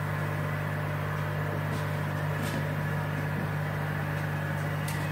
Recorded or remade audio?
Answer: remade